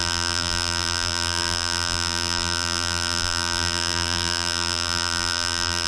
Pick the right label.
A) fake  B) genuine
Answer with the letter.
A